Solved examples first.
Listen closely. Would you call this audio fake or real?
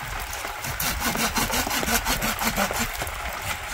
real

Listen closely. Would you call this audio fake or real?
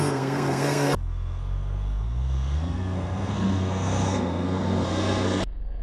fake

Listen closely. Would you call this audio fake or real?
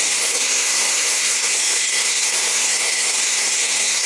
fake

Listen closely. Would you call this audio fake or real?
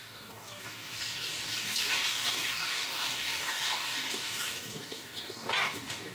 fake